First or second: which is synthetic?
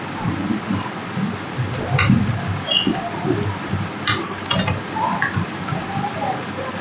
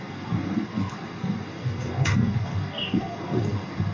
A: second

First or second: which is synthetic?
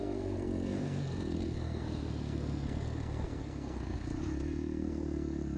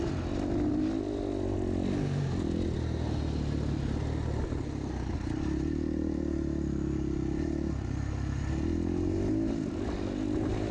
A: first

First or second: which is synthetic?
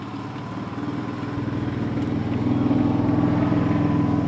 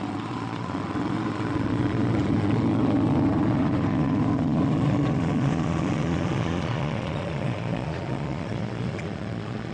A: second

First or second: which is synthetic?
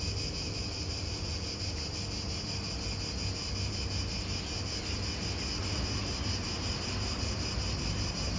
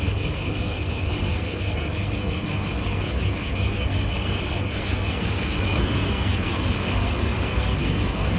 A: second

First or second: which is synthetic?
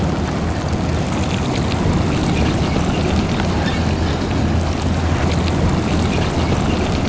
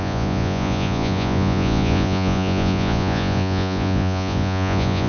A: second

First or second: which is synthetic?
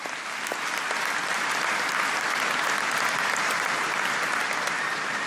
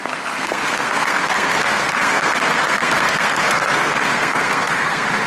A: second